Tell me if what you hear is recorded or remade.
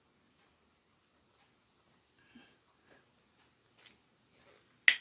recorded